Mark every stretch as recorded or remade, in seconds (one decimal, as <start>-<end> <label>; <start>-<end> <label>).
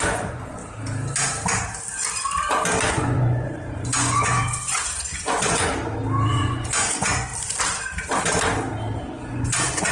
0.0-0.6 remade; 0.6-2.9 recorded; 2.9-5.7 remade; 5.7-6.3 recorded; 6.3-7.3 remade; 7.3-9.0 recorded; 9.0-9.9 remade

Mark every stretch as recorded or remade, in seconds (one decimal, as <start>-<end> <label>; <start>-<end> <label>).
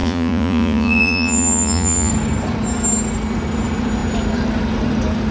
0.0-2.1 remade; 2.1-5.3 recorded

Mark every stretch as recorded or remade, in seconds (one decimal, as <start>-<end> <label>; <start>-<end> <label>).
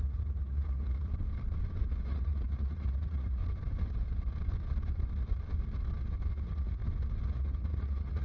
0.0-1.1 remade; 1.1-2.0 recorded; 2.0-3.4 remade; 3.4-6.3 recorded; 6.3-6.8 remade; 6.8-7.3 recorded; 7.3-8.2 remade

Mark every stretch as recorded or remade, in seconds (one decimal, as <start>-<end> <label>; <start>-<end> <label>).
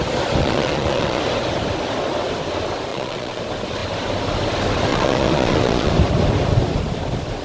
0.0-0.4 recorded; 0.4-1.2 remade; 1.2-2.9 recorded; 2.9-3.4 remade; 3.4-4.9 recorded; 4.9-5.9 remade; 5.9-7.4 recorded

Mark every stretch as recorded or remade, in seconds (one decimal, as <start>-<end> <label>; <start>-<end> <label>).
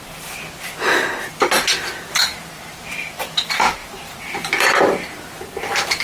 0.0-6.0 recorded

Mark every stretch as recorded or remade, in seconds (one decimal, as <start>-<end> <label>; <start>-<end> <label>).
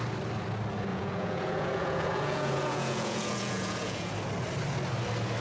0.0-0.9 recorded; 0.9-4.1 remade; 4.1-5.4 recorded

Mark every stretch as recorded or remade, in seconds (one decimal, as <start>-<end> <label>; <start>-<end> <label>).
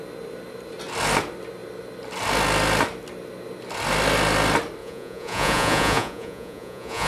0.0-4.8 recorded; 4.8-7.1 remade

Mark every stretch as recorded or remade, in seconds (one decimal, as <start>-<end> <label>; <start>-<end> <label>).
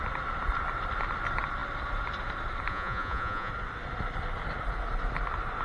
0.0-2.7 recorded; 2.7-3.5 remade; 3.5-5.6 recorded